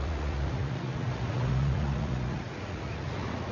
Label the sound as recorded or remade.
remade